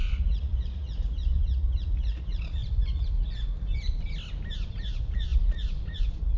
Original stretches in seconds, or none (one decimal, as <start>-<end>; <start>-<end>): 3.7-4.7